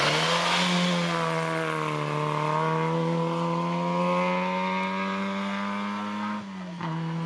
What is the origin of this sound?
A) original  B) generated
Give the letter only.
A